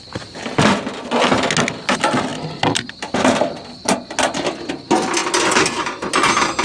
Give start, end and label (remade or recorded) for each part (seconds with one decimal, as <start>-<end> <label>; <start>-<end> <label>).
0.0-6.6 recorded